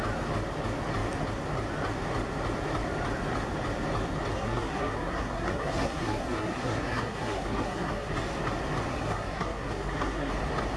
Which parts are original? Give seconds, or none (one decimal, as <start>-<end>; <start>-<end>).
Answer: 0.0-4.3; 8.1-8.9; 10.3-10.8